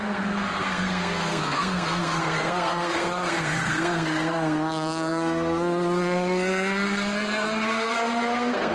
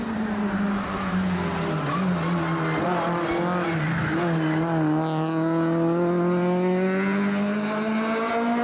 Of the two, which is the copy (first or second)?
first